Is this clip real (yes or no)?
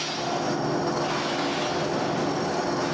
yes